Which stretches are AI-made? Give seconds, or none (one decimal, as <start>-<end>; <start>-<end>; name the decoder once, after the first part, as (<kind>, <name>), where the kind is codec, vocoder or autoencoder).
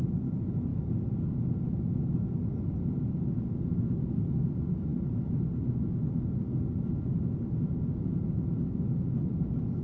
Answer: none